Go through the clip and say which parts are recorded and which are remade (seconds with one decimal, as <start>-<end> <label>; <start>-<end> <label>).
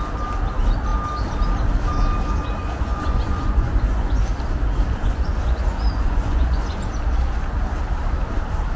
0.0-2.6 recorded; 2.6-4.2 remade; 4.2-5.0 recorded; 5.0-6.8 remade; 6.8-8.8 recorded